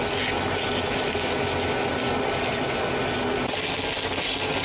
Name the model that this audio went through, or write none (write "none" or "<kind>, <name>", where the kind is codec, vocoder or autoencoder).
none